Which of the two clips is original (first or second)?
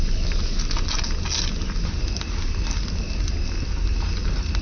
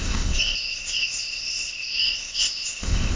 first